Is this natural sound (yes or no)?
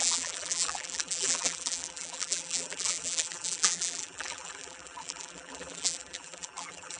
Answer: no